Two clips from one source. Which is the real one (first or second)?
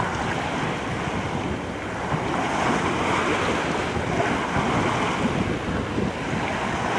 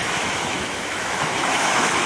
first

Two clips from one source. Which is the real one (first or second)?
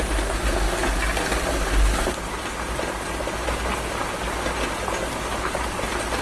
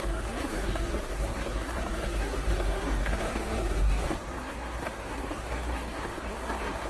first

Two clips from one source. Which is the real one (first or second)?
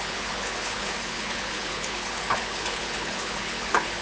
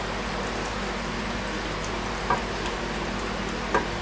second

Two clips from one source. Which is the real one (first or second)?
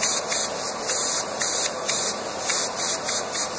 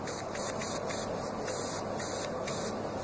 second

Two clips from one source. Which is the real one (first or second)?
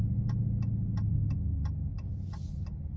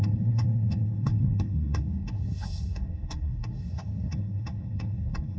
first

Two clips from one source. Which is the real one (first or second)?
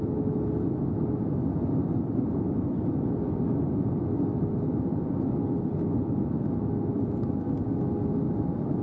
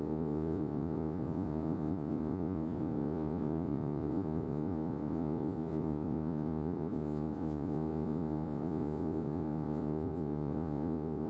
first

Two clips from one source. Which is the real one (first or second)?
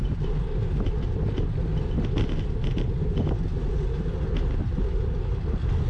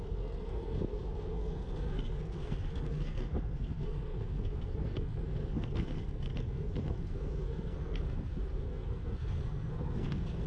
first